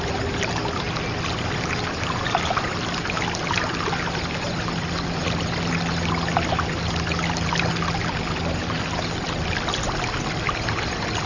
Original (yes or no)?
yes